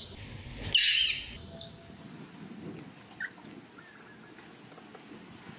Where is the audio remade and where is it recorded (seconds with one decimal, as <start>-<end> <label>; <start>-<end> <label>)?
0.0-5.6 recorded